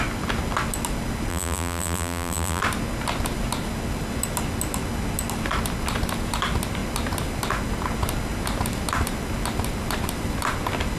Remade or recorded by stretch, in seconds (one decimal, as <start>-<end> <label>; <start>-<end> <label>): 0.0-1.3 recorded; 1.3-2.6 remade; 2.6-11.0 recorded